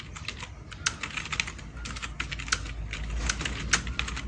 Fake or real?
real